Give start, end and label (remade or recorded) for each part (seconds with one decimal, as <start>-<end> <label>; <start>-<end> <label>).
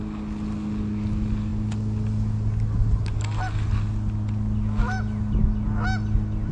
0.0-6.5 recorded